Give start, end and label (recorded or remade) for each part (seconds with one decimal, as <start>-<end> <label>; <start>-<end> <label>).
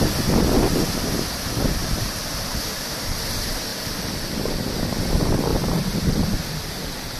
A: 0.0-3.7 recorded; 3.7-4.8 remade; 4.8-5.5 recorded; 5.5-7.2 remade